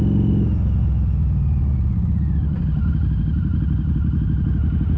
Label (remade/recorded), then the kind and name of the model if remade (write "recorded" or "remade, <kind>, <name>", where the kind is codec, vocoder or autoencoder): recorded